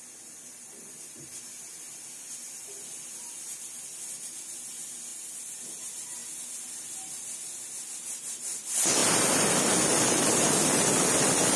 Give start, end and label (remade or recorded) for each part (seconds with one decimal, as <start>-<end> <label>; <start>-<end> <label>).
0.0-5.1 recorded; 5.1-5.6 remade; 5.6-11.6 recorded